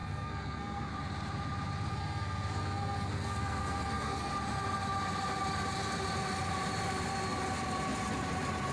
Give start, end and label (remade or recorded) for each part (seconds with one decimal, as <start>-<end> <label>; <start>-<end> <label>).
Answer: 0.0-0.9 remade; 0.9-1.9 recorded; 1.9-4.3 remade; 4.3-8.7 recorded